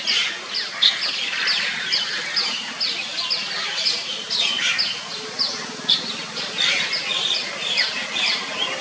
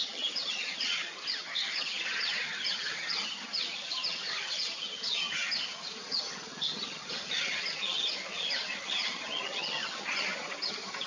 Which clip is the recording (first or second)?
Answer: first